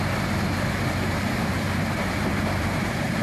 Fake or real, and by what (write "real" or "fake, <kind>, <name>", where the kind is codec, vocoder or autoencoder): fake, vocoder, BigVGAN v2